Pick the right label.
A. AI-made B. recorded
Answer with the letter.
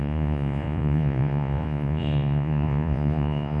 A